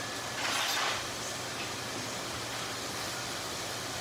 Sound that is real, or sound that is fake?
real